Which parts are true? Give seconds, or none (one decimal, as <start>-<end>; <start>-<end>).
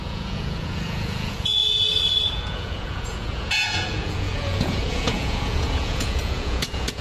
1.6-2.3